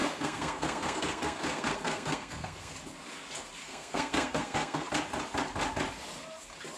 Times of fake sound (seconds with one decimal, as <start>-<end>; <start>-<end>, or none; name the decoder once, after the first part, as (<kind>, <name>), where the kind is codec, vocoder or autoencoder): 0.0-2.7 (codec, SNAC); 3.6-4.9